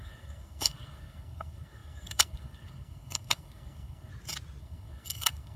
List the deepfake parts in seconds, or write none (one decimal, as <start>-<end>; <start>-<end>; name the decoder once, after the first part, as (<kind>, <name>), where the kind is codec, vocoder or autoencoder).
0.0-4.1 (codec, SNAC); 4.6-5.6